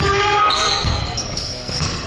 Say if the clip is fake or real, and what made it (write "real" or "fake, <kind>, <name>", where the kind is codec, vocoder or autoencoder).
fake, codec, SNAC